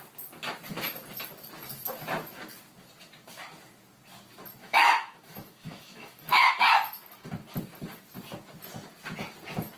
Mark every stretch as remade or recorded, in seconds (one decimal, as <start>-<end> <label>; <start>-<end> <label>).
0.0-4.6 recorded; 4.6-6.5 remade; 6.5-9.8 recorded

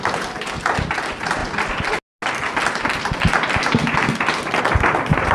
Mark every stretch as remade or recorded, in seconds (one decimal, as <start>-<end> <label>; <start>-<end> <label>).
0.0-5.3 recorded

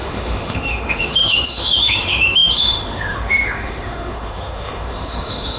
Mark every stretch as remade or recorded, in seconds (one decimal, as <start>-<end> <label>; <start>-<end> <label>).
0.0-5.6 remade

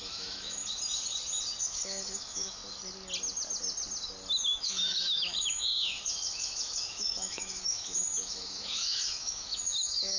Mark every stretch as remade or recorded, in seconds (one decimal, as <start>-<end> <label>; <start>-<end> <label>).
0.0-0.6 remade; 0.6-1.6 recorded; 1.6-2.6 remade; 2.6-4.3 recorded; 4.3-10.2 remade

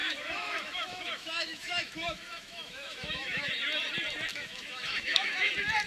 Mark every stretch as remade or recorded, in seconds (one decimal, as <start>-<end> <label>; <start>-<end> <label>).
0.0-3.5 remade; 3.5-4.3 recorded; 4.3-5.5 remade; 5.5-5.9 recorded

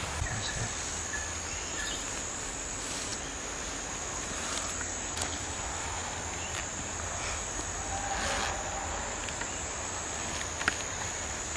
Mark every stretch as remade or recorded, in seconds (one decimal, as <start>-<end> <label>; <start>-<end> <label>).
0.0-11.6 recorded

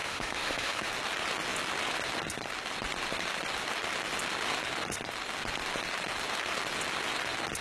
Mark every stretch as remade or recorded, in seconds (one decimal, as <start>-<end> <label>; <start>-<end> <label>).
0.0-0.9 remade; 0.9-7.6 recorded

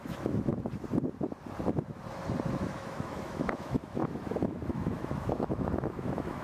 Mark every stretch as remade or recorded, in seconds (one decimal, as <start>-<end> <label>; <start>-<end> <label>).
0.0-0.5 remade; 0.5-2.7 recorded; 2.7-6.4 remade